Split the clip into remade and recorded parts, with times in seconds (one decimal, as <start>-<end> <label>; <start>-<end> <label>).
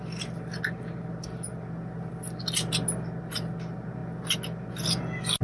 0.0-5.4 recorded